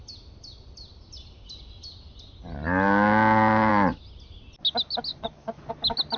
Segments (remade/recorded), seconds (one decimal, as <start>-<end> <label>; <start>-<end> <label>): 0.0-5.1 recorded; 5.1-5.7 remade; 5.7-6.2 recorded